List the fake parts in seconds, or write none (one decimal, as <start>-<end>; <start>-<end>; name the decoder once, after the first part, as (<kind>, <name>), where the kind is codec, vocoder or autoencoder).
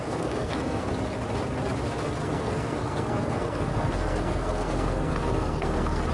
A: 0.0-0.9 (codec, SNAC); 2.2-6.1